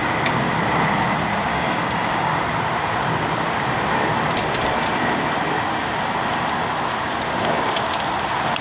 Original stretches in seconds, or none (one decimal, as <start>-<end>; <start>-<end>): 0.0-1.5; 2.3-8.6